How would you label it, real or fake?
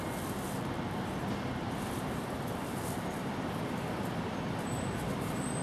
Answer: real